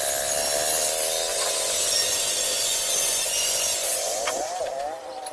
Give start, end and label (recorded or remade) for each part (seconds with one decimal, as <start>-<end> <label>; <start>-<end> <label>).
0.0-1.3 recorded; 1.3-4.5 remade; 4.5-5.3 recorded